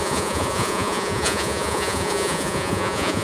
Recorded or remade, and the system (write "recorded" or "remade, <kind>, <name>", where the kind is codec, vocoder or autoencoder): remade, vocoder, Vocos